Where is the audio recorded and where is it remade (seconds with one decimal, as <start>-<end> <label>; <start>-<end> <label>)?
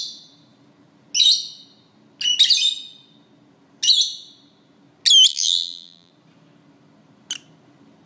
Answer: 0.0-5.3 recorded; 5.3-6.1 remade; 6.1-8.1 recorded